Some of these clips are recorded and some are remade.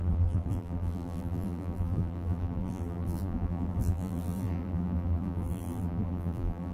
remade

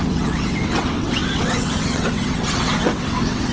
remade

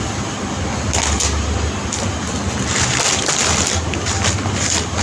recorded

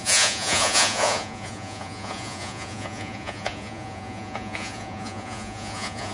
remade